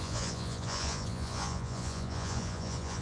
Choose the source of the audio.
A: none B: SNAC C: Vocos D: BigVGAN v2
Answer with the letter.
C